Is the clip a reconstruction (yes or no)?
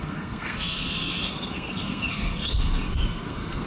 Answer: yes